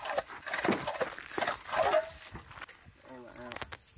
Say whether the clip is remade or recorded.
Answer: recorded